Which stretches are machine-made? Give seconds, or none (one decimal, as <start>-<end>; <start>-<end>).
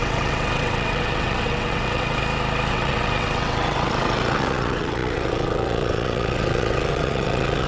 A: 0.0-2.2; 2.7-7.7